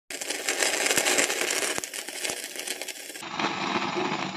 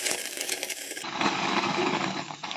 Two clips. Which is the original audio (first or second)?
first